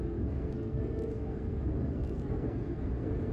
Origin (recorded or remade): remade